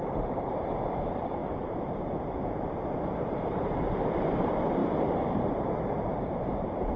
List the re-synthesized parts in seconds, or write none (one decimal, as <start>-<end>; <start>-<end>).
0.0-7.0